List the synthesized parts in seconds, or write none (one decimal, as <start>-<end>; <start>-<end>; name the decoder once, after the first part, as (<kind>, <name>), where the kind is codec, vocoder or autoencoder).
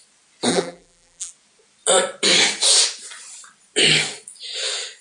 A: 0.5-1.3 (vocoder, BigVGAN v2)